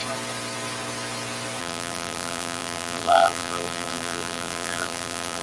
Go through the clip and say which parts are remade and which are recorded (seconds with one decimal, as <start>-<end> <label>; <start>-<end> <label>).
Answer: 0.0-1.6 recorded; 1.6-5.4 remade